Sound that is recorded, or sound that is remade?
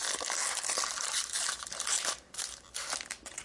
recorded